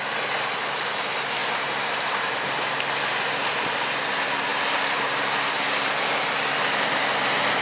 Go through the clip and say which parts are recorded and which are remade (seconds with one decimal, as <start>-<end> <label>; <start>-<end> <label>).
0.0-1.4 recorded; 1.4-2.1 remade; 2.1-7.6 recorded